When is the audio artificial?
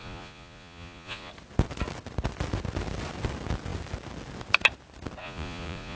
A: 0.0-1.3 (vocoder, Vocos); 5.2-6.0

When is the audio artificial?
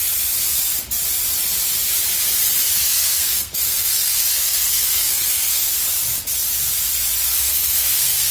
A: 3.0-5.8 (codec, SNAC); 7.3-8.3